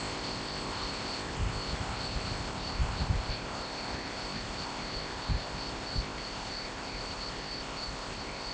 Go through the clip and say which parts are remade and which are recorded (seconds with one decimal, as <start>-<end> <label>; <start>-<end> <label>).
0.0-8.5 remade